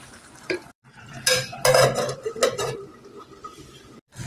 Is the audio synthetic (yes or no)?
yes